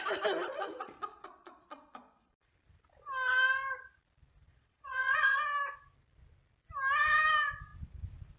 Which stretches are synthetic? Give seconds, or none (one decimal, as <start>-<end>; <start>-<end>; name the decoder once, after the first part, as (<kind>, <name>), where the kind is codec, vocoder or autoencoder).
0.4-2.5 (vocoder, Vocos); 4.5-5.4